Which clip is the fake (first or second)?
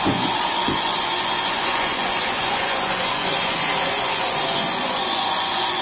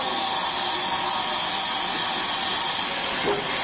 first